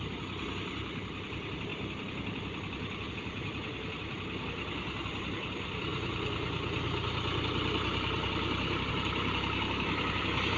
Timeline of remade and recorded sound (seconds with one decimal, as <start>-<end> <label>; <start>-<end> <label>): 0.0-10.6 recorded